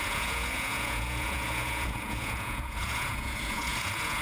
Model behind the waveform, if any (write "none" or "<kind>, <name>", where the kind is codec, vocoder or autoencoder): vocoder, Vocos